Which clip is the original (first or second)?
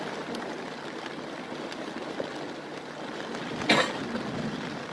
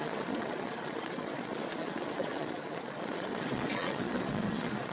first